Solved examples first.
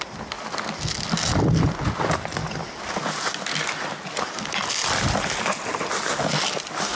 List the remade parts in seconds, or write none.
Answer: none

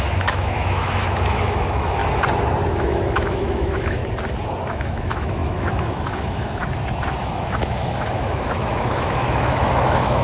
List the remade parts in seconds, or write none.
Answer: 0.0-2.0 (autoencoder, DAC-VAE); 2.7-4.0; 4.7-6.6; 7.2-10.2

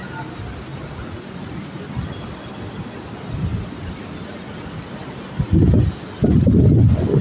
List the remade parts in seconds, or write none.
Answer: 0.7-1.7 (vocoder, Vocos)

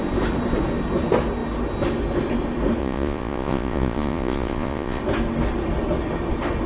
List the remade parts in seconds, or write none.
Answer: 2.8-5.0 (vocoder, Vocos)

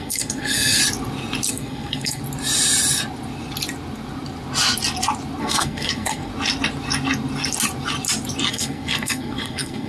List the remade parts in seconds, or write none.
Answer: 0.0-0.8 (codec, SNAC); 1.5-2.2; 5.4-6.3; 8.5-9.9

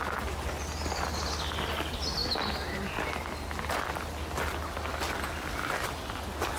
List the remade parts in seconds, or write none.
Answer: none

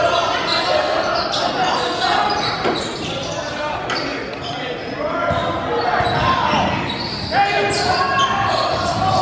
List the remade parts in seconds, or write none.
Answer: none

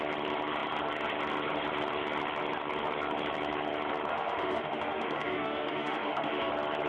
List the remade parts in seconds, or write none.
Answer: 4.1-6.5 (autoencoder, DAC-VAE)